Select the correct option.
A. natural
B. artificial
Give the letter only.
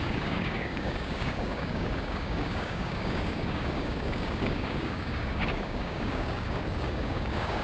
B